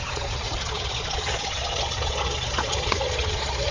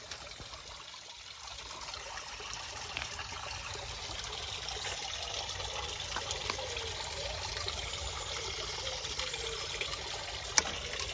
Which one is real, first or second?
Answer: second